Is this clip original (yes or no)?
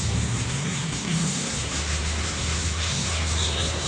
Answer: no